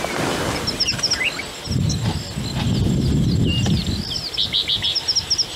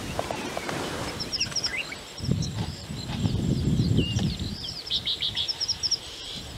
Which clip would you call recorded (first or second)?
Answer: first